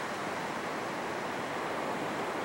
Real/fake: real